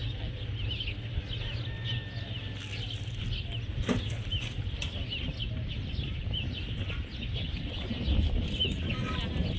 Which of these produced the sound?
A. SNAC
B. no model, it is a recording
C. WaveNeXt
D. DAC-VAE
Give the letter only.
B